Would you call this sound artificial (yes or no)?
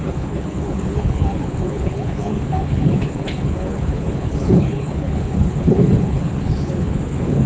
yes